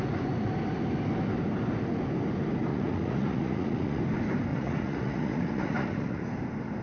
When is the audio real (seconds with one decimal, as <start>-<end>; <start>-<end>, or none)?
0.0-2.7; 4.0-4.5; 6.2-6.8